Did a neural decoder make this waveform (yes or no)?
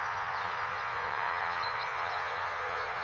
yes